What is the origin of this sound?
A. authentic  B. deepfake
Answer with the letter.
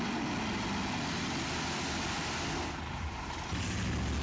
A